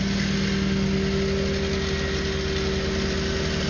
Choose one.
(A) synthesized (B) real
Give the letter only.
B